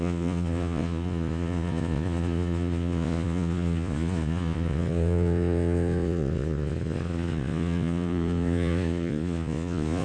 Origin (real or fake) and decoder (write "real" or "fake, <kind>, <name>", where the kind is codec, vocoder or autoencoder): fake, vocoder, Vocos